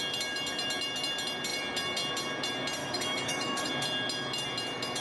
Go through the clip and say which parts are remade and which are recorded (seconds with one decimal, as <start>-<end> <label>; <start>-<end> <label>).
0.0-2.8 recorded; 2.8-3.7 remade; 3.7-5.0 recorded